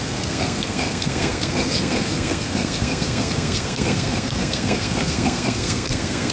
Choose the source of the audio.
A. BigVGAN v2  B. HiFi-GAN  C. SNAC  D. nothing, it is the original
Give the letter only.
C